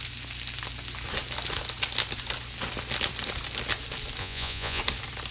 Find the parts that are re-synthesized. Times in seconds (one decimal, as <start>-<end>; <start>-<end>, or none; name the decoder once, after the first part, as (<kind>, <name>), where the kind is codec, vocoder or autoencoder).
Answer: 4.2-4.8 (vocoder, Vocos)